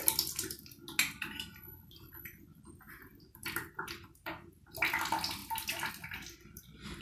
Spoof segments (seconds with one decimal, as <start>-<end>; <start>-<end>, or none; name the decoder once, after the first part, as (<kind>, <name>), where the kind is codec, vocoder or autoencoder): none